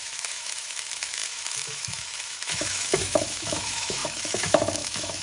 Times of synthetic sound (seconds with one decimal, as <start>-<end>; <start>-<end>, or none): 0.0-5.2